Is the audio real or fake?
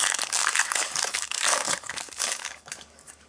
fake